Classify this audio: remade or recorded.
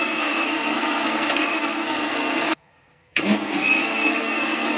remade